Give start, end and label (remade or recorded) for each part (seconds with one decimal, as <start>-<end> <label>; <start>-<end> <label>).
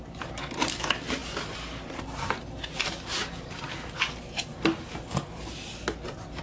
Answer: 0.0-6.4 recorded